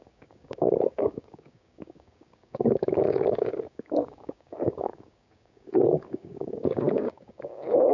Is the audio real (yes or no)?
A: no